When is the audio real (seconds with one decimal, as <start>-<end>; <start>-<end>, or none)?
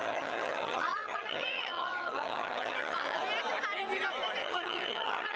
3.2-4.4